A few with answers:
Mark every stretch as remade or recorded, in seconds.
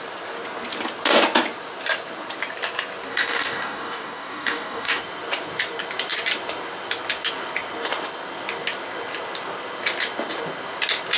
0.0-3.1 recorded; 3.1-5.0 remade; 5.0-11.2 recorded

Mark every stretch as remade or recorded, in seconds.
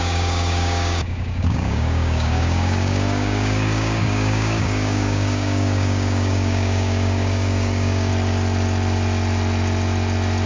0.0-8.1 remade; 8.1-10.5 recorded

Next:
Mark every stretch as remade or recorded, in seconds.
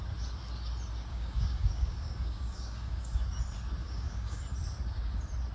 0.0-1.1 recorded; 1.1-3.4 remade; 3.4-3.8 recorded; 3.8-4.4 remade; 4.4-5.5 recorded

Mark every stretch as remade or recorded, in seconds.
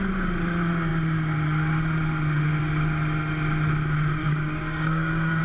0.0-4.2 recorded; 4.2-5.4 remade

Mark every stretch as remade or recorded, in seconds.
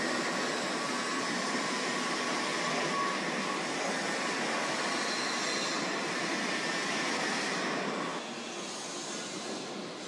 0.0-10.1 recorded